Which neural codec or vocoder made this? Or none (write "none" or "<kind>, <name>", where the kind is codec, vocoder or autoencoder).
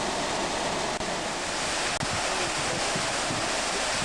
none